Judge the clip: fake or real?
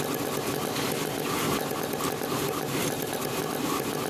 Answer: real